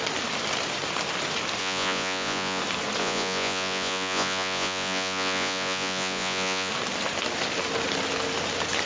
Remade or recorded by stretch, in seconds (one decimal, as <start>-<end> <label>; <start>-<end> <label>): 0.0-1.6 recorded; 1.6-2.6 remade; 2.6-3.0 recorded; 3.0-6.7 remade; 6.7-8.9 recorded